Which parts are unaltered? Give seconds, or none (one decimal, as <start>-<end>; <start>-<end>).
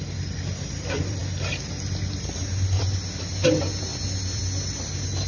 none